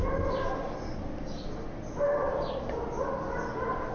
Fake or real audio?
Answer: real